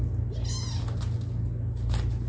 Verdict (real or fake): real